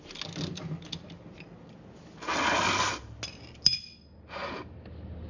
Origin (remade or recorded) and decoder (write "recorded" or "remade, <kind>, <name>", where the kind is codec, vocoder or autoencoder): recorded